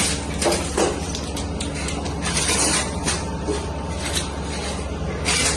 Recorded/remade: recorded